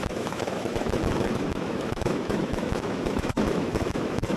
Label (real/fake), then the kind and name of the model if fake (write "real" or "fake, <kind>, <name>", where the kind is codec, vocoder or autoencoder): fake, autoencoder, DAC-VAE